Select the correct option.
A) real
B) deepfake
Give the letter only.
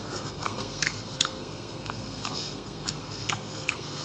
B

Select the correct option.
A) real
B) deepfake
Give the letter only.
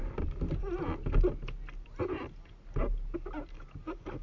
A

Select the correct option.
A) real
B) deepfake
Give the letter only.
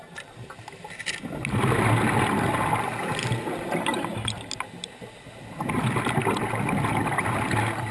A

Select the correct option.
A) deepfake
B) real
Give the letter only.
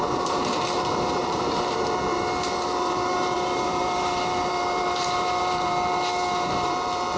A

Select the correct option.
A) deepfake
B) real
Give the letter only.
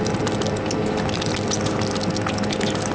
B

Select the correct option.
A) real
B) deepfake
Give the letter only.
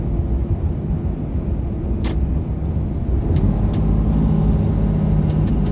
A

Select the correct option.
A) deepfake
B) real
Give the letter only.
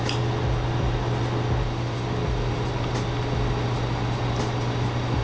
B